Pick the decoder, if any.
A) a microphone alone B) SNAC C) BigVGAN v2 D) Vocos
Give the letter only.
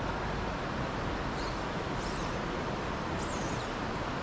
A